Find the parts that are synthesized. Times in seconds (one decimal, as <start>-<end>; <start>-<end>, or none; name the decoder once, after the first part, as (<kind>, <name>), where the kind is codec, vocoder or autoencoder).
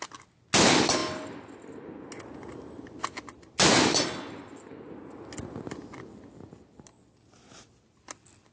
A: none